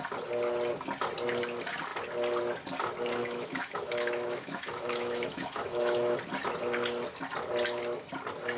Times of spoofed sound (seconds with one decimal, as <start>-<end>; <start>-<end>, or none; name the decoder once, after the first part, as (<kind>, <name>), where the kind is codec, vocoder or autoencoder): 3.2-6.1 (autoencoder, DAC-VAE)